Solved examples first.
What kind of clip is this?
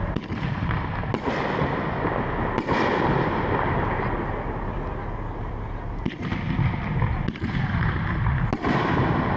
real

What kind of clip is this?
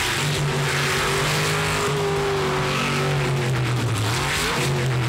real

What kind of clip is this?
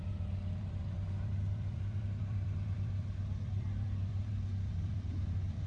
fake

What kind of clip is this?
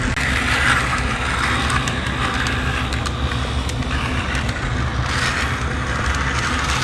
real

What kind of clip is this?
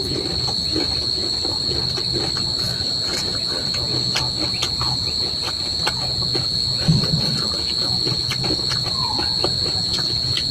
real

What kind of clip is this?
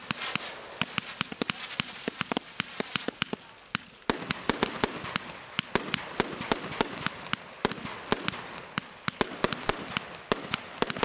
real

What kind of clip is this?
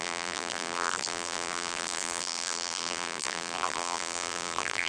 fake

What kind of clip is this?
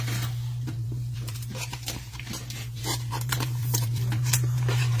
fake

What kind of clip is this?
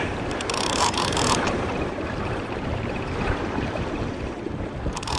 fake